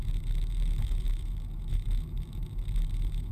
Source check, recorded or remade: remade